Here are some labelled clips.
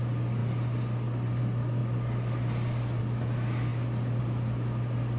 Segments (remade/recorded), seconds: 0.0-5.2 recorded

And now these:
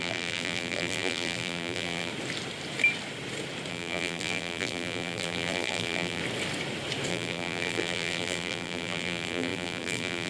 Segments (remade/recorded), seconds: 0.0-2.1 remade; 2.1-3.7 recorded; 3.7-6.2 remade; 6.2-7.1 recorded; 7.1-10.3 remade